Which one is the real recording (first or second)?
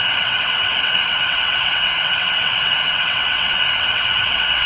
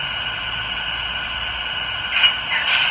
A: second